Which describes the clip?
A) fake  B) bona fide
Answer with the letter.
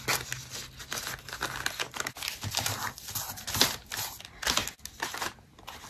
B